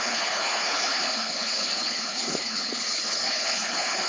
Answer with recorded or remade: remade